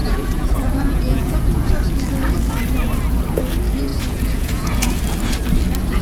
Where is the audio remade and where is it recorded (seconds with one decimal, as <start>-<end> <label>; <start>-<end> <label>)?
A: 0.0-1.7 remade; 1.7-3.9 recorded; 3.9-5.0 remade; 5.0-6.0 recorded